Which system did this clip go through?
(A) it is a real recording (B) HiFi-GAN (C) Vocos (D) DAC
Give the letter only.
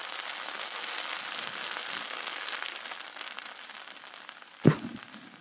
A